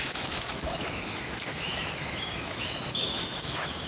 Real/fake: fake